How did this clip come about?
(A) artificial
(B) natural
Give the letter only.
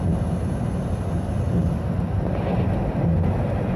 B